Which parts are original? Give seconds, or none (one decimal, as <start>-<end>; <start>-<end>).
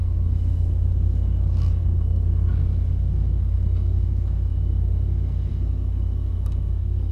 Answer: none